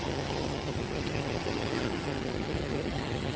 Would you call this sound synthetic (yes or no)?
yes